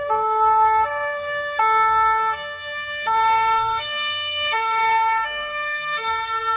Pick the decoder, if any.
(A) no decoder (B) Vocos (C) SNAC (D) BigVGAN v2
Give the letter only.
C